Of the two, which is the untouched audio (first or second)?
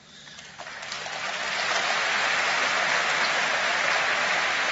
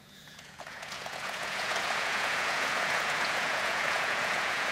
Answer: first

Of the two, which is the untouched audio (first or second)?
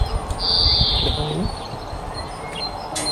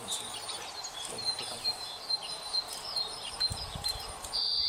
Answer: first